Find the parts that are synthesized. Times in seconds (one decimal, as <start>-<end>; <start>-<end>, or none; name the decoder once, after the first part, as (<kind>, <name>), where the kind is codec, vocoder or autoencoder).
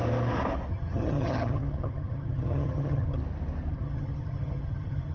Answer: 0.7-3.2 (vocoder, HiFi-GAN); 3.7-5.1